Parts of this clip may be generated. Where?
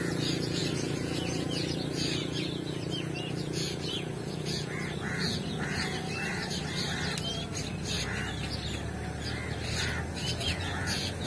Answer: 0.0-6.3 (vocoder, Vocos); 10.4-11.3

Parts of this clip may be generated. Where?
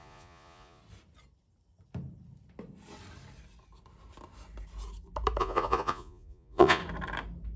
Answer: 0.0-0.8 (vocoder, Vocos); 5.4-6.8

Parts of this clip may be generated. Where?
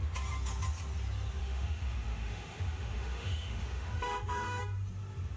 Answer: 1.4-4.6 (autoencoder, DAC-VAE)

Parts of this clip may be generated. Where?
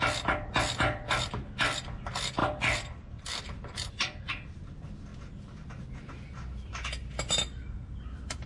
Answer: none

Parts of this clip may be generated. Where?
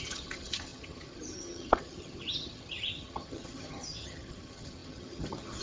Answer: 0.0-5.6 (vocoder, HiFi-GAN)